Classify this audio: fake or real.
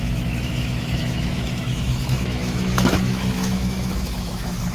fake